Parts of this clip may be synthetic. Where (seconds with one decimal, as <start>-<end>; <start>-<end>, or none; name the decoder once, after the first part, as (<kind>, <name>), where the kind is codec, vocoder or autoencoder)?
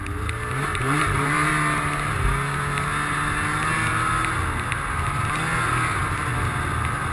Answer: 0.7-1.5 (vocoder, BigVGAN v2)